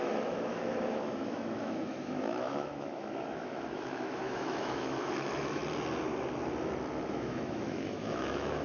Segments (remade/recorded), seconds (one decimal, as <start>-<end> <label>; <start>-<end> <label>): 0.0-5.6 remade; 5.6-7.1 recorded; 7.1-8.6 remade